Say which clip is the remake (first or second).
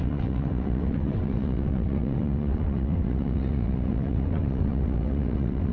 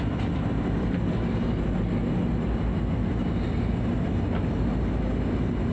first